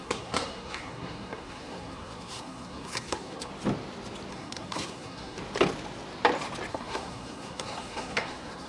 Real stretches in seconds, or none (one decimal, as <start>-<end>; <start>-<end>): 3.5-4.3; 5.4-6.7